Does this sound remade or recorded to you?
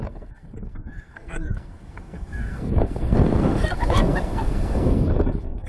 remade